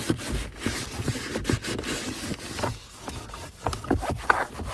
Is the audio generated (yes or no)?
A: no